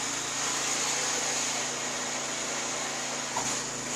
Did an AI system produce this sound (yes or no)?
no